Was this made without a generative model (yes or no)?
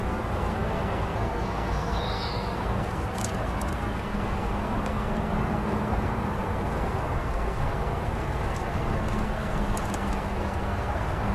no